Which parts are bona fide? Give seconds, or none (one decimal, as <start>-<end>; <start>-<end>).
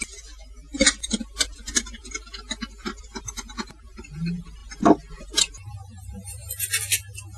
2.0-3.0; 6.4-7.4